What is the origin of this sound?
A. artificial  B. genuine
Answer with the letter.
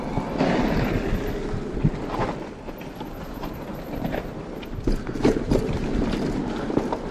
B